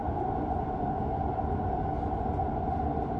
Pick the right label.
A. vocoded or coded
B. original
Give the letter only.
B